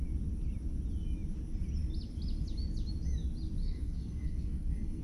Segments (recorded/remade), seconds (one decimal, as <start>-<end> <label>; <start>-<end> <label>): 0.0-3.6 recorded; 3.6-5.0 remade